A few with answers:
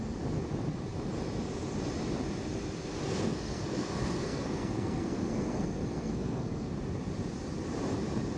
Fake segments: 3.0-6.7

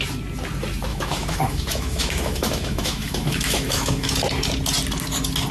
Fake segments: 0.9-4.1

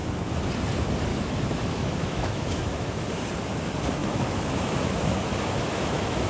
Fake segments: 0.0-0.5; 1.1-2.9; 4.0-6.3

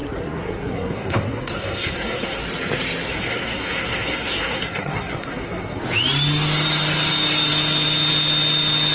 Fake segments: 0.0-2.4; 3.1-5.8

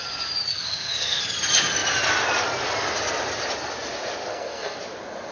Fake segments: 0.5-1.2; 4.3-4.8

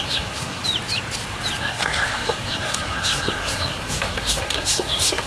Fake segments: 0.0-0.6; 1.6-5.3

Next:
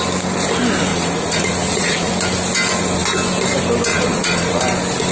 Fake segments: 0.9-2.1; 3.9-4.6

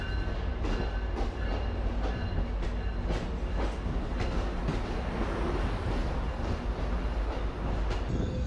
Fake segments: none